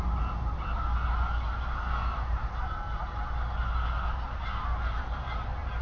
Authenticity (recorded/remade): recorded